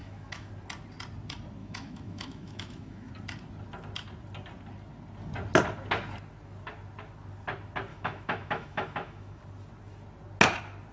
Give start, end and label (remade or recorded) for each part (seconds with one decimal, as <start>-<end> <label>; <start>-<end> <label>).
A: 0.0-0.5 remade; 0.5-1.6 recorded; 1.6-3.1 remade; 3.1-7.9 recorded; 7.9-9.4 remade; 9.4-10.9 recorded